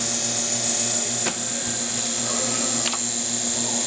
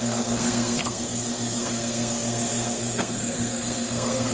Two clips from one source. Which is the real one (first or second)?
first